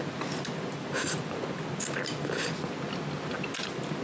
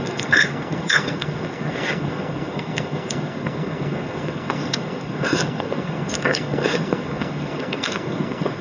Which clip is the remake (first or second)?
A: second